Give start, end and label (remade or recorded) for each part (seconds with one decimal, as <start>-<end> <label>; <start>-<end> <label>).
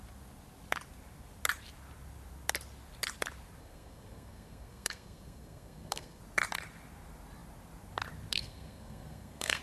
0.0-3.6 recorded; 3.6-6.2 remade; 6.2-8.3 recorded; 8.3-9.6 remade